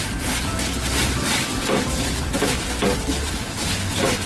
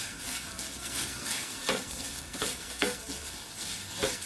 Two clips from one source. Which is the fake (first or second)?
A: second